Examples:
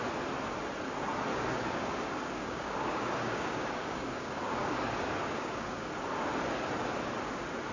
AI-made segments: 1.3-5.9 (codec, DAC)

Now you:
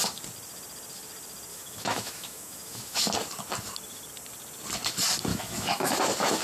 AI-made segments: 1.5-3.0 (autoencoder, DAC-VAE); 5.3-6.0

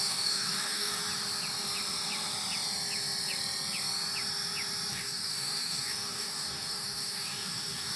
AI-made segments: 0.0-1.0 (codec, DAC); 4.9-8.0